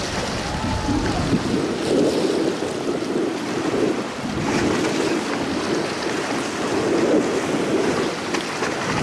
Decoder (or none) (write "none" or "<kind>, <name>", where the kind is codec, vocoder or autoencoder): none